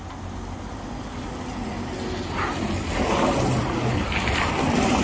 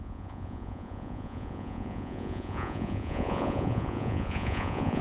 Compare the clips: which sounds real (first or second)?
first